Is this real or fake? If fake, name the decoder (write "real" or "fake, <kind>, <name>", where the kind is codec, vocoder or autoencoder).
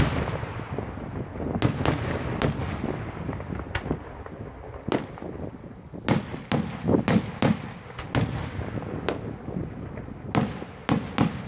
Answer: real